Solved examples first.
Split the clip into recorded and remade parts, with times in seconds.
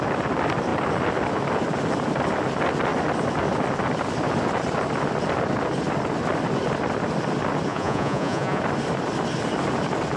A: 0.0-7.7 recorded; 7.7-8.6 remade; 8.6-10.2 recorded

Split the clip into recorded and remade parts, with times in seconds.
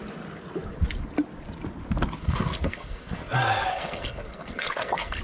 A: 0.0-2.2 recorded; 2.2-5.2 remade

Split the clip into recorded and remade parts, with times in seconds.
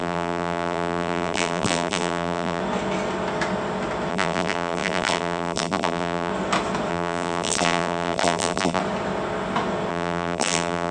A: 0.0-2.6 remade; 2.6-4.1 recorded; 4.1-6.3 remade; 6.3-6.9 recorded; 6.9-8.8 remade; 8.8-9.9 recorded; 9.9-10.9 remade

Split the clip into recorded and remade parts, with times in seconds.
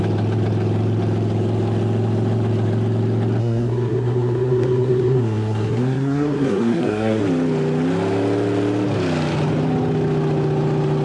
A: 0.0-3.4 recorded; 3.4-7.2 remade; 7.2-11.0 recorded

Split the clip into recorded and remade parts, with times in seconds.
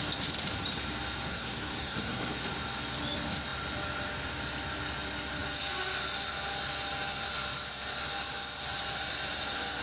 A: 0.0-1.3 recorded; 1.3-2.3 remade; 2.3-9.8 recorded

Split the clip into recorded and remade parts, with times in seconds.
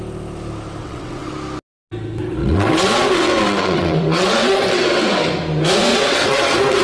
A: 0.0-0.8 recorded; 0.8-1.3 remade; 1.3-2.4 recorded; 2.4-5.3 remade; 5.3-5.9 recorded; 5.9-6.8 remade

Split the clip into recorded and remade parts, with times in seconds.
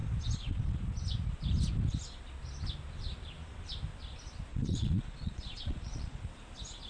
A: 0.0-4.5 recorded; 4.5-6.2 remade; 6.2-6.9 recorded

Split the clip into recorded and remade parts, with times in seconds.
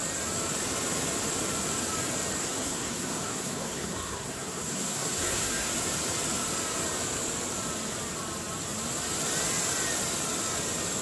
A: 0.0-2.4 recorded; 2.4-5.7 remade; 5.7-11.0 recorded